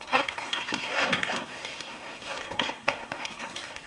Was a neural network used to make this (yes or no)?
yes